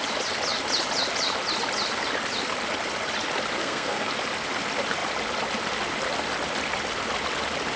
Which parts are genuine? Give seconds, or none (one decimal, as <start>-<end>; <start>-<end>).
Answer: 0.0-3.6; 4.1-7.8